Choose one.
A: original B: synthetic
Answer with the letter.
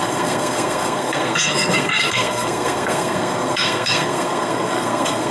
B